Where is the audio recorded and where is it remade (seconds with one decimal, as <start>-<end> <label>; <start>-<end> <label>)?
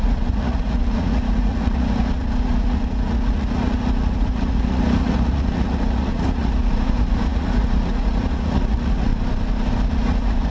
0.0-9.1 remade; 9.1-9.9 recorded; 9.9-10.5 remade